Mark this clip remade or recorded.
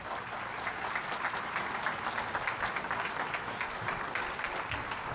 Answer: recorded